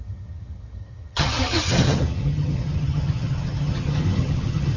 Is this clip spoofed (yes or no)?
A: yes